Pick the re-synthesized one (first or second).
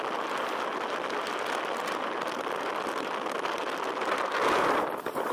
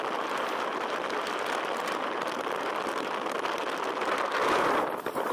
second